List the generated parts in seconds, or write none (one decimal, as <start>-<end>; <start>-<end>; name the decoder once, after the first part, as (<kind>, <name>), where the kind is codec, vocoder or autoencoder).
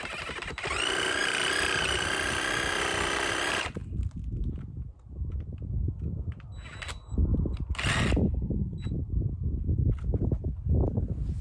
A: none